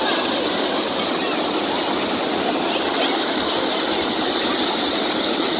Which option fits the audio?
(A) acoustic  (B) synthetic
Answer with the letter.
A